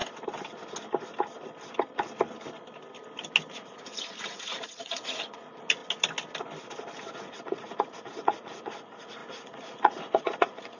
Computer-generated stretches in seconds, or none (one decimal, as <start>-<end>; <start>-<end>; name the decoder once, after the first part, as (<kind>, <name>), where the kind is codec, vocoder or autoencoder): 3.5-5.8 (vocoder, Vocos); 7.0-10.8